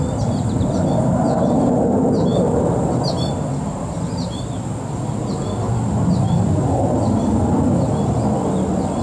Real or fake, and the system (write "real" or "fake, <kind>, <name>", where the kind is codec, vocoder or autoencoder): real